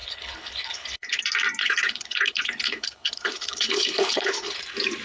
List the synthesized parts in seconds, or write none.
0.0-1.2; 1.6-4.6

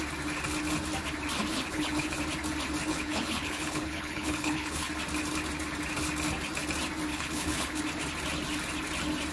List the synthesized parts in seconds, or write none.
1.5-2.2; 2.9-4.9; 7.1-7.8

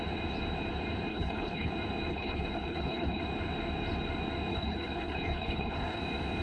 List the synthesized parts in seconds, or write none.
1.1-1.7; 2.1-3.2; 4.5-6.0

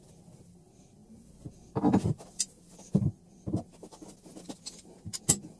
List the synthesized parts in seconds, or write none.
none

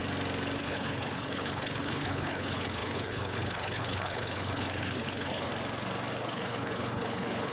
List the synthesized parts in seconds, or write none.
0.6-5.5; 6.2-7.5

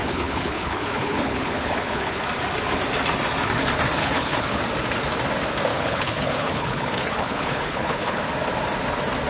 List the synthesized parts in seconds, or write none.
0.0-2.2; 4.0-4.6; 5.7-8.2

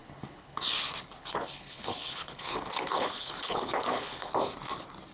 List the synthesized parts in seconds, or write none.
0.0-0.6; 1.2-4.3